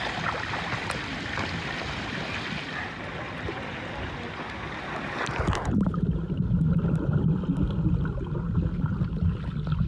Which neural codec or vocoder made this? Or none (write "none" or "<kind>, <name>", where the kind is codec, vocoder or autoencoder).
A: none